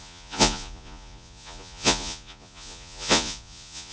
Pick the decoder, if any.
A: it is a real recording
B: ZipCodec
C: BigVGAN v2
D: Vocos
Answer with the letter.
D